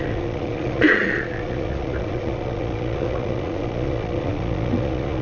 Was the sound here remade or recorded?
remade